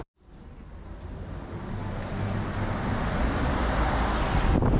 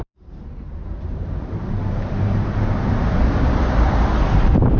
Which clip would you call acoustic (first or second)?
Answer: first